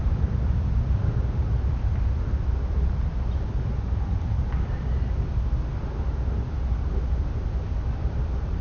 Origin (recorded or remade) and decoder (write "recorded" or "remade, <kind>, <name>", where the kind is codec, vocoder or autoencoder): recorded